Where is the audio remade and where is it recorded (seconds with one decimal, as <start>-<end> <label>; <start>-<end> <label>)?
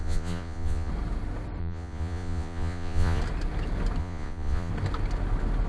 0.0-0.9 remade; 0.9-1.6 recorded; 1.6-3.2 remade; 3.2-4.0 recorded; 4.0-4.7 remade; 4.7-5.7 recorded